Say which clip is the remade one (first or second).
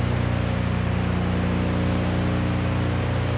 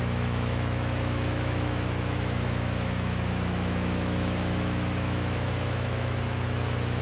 second